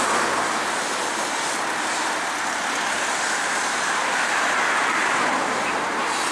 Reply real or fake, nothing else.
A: real